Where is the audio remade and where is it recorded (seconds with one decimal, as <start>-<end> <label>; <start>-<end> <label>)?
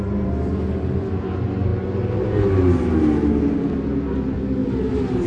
0.0-5.3 recorded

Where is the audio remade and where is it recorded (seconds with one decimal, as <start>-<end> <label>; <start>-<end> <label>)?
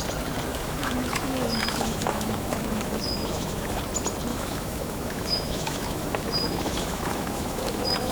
0.0-0.5 recorded; 0.5-3.8 remade; 3.8-4.3 recorded; 4.3-8.1 remade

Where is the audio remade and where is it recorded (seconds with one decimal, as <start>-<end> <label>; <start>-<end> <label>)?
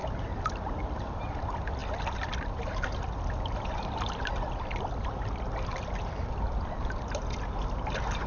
0.0-8.3 recorded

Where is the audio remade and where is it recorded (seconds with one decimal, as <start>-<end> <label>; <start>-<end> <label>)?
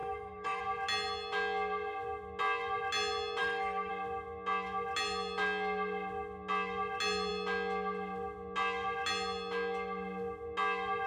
0.0-0.6 remade; 0.6-3.4 recorded; 3.4-3.9 remade; 3.9-11.1 recorded